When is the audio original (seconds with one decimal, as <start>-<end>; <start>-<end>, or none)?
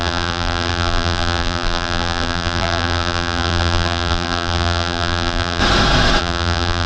5.6-6.2